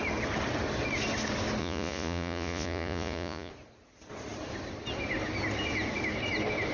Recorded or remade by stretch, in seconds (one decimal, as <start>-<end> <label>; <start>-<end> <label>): 0.0-1.6 recorded; 1.6-3.5 remade; 3.5-6.7 recorded